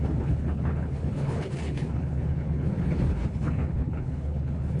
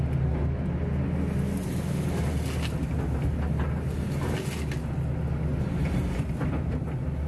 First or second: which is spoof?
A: first